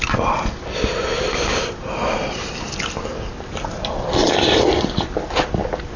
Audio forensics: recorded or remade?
recorded